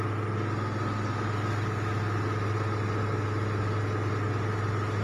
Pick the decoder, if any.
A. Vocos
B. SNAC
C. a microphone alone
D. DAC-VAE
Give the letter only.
C